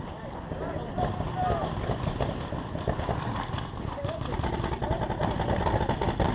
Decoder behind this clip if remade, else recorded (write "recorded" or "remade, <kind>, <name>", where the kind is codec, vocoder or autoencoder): recorded